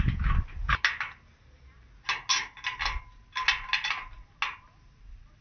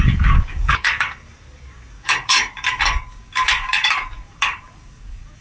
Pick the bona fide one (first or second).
first